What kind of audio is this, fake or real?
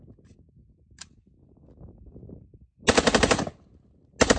real